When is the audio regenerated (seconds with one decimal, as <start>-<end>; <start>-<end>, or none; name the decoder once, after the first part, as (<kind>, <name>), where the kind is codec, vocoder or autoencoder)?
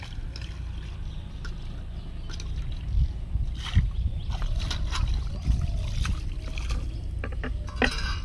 none